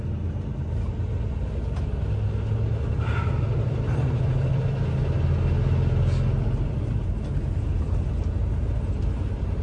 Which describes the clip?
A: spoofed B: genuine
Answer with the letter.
B